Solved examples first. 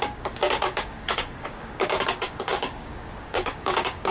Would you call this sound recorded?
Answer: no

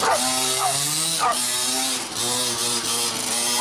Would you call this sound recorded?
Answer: yes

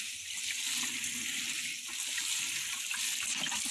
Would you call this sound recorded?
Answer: yes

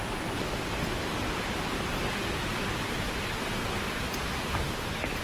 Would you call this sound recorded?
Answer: yes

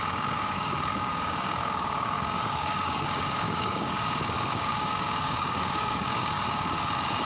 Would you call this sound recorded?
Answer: no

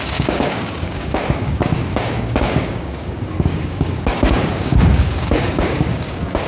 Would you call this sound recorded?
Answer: no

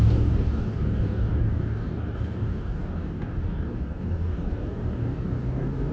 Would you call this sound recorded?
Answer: no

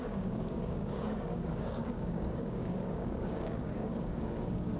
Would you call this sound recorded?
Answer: no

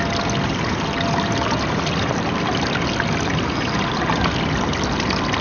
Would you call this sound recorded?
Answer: yes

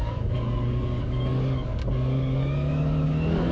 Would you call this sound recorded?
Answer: no